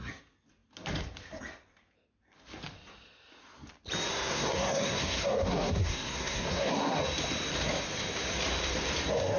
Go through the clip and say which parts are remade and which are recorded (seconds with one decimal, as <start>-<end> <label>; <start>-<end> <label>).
0.0-4.1 recorded; 4.1-7.0 remade; 7.0-9.4 recorded